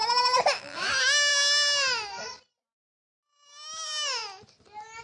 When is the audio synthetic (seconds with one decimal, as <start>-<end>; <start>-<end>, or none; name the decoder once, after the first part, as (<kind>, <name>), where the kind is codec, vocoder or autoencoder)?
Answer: none

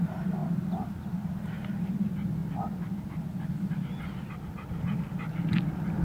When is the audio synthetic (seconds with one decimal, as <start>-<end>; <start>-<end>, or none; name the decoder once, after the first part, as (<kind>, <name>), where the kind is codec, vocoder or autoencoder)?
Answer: none

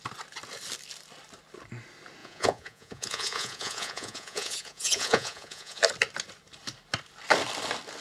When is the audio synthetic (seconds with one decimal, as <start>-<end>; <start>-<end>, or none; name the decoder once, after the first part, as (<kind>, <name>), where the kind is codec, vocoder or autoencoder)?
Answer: 2.2-5.8 (vocoder, Vocos)

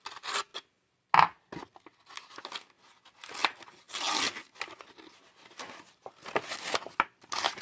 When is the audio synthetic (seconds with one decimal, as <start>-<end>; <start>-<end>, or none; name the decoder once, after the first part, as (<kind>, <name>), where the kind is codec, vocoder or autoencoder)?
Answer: none